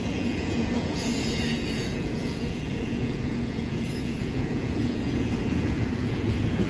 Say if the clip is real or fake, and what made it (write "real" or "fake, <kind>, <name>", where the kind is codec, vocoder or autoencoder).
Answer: fake, vocoder, Vocos